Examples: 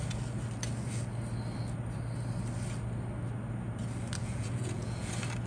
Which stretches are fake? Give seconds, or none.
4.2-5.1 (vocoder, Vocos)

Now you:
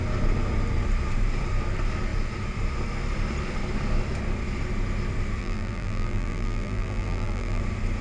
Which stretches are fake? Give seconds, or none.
5.4-7.6 (vocoder, BigVGAN v2)

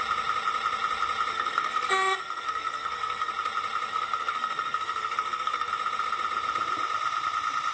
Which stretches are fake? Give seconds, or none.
1.3-3.3 (codec, SNAC); 3.9-5.7

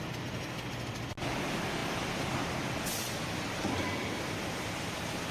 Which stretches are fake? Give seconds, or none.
none

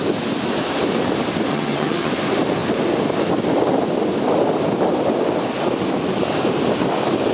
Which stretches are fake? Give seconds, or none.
1.5-2.1 (vocoder, HiFi-GAN)